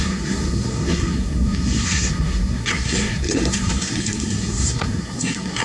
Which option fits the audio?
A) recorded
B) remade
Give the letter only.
B